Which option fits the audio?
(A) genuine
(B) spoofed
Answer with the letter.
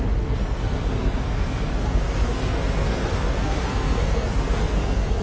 B